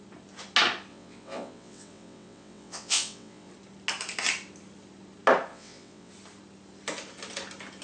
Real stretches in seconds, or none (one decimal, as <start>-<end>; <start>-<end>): 0.0-0.9; 3.5-5.5; 6.1-7.8